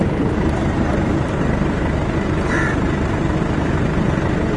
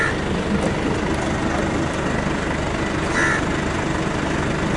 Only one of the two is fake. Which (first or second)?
first